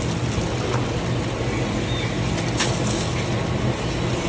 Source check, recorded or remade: recorded